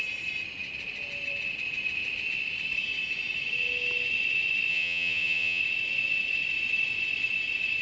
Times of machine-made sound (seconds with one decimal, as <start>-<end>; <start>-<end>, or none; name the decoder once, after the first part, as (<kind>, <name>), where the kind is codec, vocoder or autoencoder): 4.7-5.6 (vocoder, HiFi-GAN)